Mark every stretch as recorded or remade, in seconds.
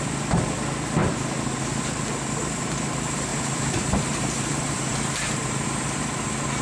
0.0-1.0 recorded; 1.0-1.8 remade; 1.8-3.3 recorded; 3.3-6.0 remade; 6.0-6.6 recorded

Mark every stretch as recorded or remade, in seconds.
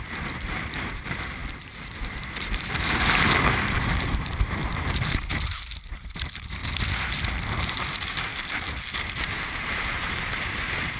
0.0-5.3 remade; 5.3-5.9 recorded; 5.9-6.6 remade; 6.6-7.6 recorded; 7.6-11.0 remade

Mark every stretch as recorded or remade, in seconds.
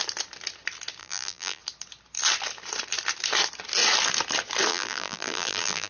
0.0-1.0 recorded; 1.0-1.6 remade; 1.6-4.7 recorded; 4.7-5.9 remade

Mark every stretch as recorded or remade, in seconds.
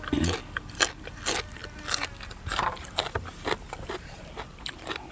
0.0-0.4 remade; 0.4-1.0 recorded; 1.0-5.1 remade